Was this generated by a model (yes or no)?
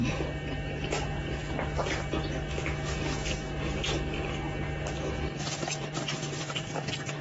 no